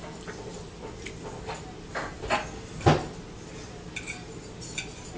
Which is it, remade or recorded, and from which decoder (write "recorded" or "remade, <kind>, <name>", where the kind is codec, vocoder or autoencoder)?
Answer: recorded